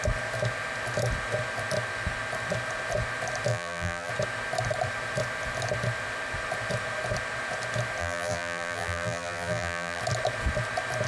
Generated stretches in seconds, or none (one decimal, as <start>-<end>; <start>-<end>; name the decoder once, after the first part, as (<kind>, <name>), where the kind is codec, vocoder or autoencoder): 3.5-4.1 (vocoder, BigVGAN v2); 8.0-10.0